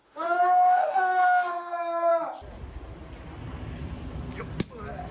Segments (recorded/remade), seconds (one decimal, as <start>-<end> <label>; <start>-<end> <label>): 0.0-1.7 remade; 1.7-5.1 recorded